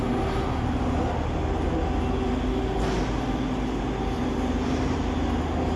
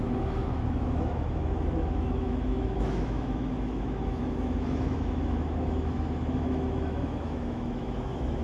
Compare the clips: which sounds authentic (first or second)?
first